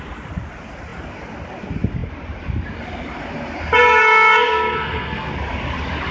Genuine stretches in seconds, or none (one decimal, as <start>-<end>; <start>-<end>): 0.0-4.0; 5.3-6.1